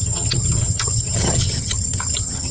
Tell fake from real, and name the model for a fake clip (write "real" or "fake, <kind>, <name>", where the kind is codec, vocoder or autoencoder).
fake, vocoder, HiFi-GAN